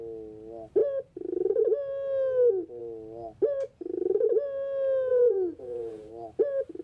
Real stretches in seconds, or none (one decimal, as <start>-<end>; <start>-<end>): 0.0-5.1; 6.1-6.8